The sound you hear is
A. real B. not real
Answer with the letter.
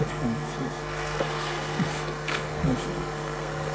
B